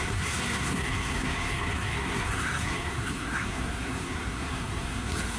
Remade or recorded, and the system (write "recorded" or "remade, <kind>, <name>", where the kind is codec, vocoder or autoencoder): remade, codec, SNAC